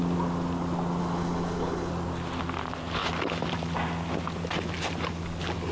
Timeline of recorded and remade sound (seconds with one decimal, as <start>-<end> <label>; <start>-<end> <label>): 0.0-1.0 recorded; 1.0-1.9 remade; 1.9-5.7 recorded